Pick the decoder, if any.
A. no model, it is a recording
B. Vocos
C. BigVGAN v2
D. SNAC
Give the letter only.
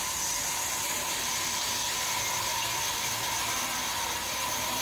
A